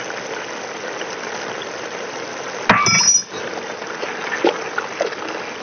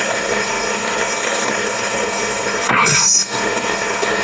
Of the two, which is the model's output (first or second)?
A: second